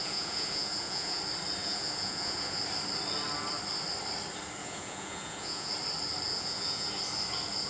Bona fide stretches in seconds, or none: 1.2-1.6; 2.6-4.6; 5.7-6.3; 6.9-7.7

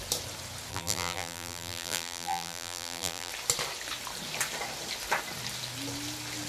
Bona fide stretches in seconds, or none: 0.0-0.7; 3.3-6.5